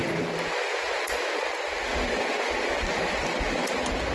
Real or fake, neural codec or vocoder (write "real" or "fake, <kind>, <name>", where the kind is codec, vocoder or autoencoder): real